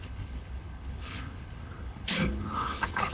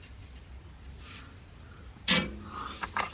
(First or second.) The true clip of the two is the second